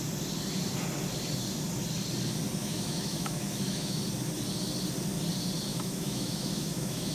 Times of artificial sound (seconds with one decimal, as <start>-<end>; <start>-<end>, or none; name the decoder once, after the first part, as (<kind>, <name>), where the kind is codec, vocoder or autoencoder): 2.6-4.0 (autoencoder, DAC-VAE); 5.7-7.1